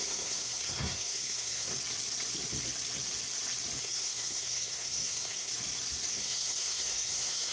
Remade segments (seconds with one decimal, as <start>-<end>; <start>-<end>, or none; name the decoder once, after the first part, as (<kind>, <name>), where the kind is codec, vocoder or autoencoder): 0.0-1.7 (codec, SNAC); 3.8-5.5; 6.1-7.5